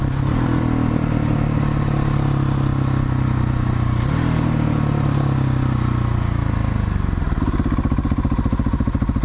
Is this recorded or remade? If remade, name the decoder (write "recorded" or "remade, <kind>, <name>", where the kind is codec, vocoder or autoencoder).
recorded